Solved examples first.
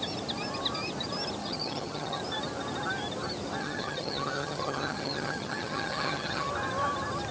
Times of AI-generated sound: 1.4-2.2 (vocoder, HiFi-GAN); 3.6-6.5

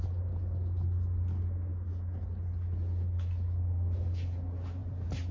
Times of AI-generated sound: 4.8-5.3 (vocoder, BigVGAN v2)

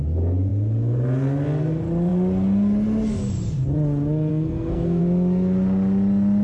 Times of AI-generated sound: 4.3-5.0 (codec, SNAC)

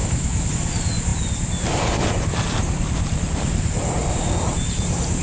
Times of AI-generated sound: 0.0-0.5 (autoencoder, DAC-VAE)